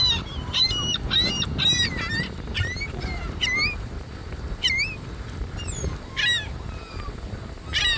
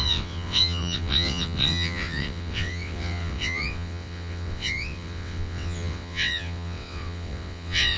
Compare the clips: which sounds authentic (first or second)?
first